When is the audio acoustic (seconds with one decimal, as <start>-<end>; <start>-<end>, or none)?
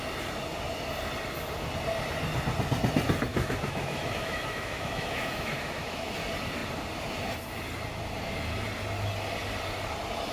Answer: 0.0-3.3; 6.1-10.3